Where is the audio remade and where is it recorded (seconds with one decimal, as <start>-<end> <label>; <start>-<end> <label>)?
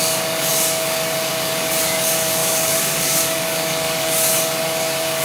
0.0-5.2 remade